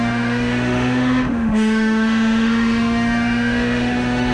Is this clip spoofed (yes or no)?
yes